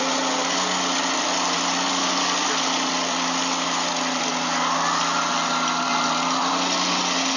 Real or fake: real